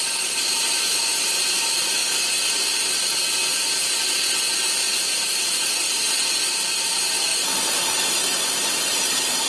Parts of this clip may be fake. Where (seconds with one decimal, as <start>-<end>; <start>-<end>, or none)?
0.0-2.0; 6.8-7.3; 8.9-9.5